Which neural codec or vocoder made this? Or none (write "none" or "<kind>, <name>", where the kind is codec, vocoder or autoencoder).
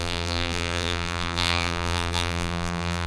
vocoder, BigVGAN v2